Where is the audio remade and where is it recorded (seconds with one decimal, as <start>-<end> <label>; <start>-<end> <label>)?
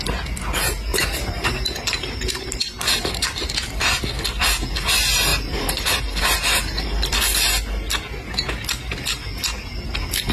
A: 0.0-0.9 recorded; 0.9-3.8 remade; 3.8-5.3 recorded; 5.3-6.0 remade; 6.0-10.3 recorded